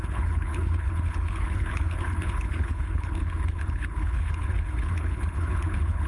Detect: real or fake fake